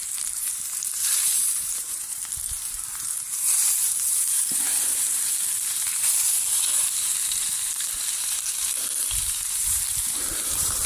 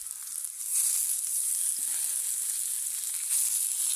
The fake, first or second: first